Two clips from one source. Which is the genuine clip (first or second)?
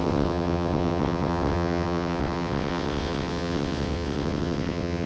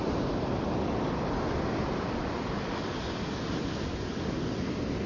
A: second